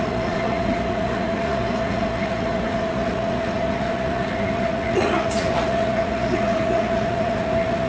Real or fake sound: fake